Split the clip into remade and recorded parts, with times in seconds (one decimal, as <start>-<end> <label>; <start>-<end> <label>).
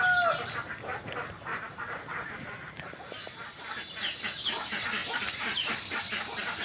0.0-1.5 recorded; 1.5-3.6 remade; 3.6-5.0 recorded; 5.0-6.1 remade; 6.1-6.6 recorded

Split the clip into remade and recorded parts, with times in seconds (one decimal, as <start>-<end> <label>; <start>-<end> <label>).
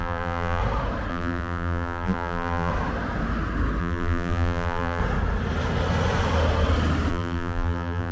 0.0-0.6 remade; 0.6-1.1 recorded; 1.1-2.7 remade; 2.7-3.8 recorded; 3.8-5.0 remade; 5.0-7.1 recorded; 7.1-8.1 remade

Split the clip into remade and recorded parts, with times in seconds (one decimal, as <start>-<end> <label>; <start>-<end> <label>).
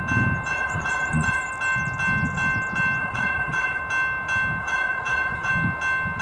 0.0-0.5 recorded; 0.5-1.5 remade; 1.5-3.0 recorded; 3.0-3.8 remade; 3.8-4.6 recorded; 4.6-5.5 remade; 5.5-6.2 recorded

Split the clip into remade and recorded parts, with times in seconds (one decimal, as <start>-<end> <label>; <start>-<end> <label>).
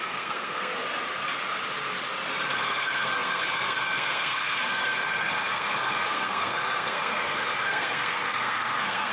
0.0-0.7 remade; 0.7-2.5 recorded; 2.5-9.1 remade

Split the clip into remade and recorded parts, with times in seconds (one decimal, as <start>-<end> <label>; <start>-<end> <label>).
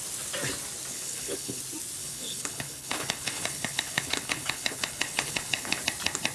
0.0-0.9 recorded; 0.9-1.6 remade; 1.6-2.0 recorded; 2.0-5.8 remade; 5.8-6.3 recorded